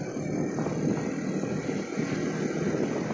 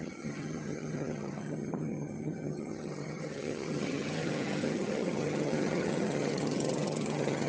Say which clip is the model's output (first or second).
second